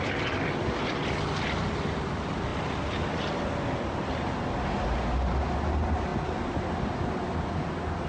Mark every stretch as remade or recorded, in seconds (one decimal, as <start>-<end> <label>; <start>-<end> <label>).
0.0-8.1 recorded